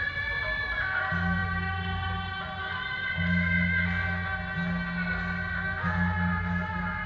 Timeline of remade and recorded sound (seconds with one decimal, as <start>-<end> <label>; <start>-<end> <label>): 0.0-7.1 recorded